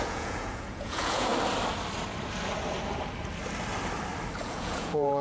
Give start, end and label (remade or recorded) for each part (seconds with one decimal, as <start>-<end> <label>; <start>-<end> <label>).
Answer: 0.0-1.3 remade; 1.3-4.4 recorded; 4.4-5.2 remade